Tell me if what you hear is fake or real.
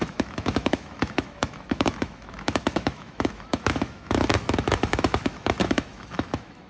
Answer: fake